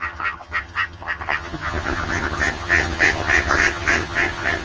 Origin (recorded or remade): remade